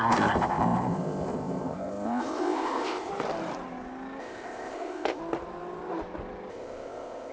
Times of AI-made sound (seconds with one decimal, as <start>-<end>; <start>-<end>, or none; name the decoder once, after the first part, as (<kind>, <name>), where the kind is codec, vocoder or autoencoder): 0.0-3.1 (codec, ZipCodec); 4.2-5.2; 6.5-7.3